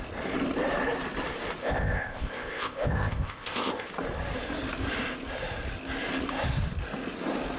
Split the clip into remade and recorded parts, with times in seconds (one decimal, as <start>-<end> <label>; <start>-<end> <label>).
0.0-1.6 recorded; 1.6-3.9 remade; 3.9-7.6 recorded